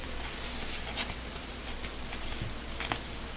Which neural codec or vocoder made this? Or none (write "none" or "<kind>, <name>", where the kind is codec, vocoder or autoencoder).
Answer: none